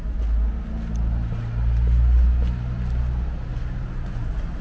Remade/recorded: recorded